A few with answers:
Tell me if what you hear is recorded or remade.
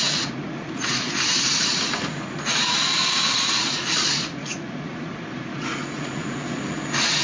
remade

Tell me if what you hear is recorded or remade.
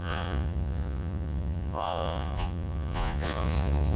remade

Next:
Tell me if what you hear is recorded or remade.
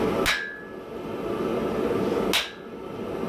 recorded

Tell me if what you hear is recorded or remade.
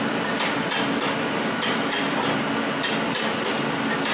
recorded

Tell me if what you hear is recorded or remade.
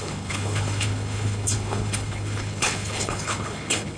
remade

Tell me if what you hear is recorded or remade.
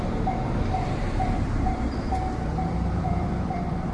remade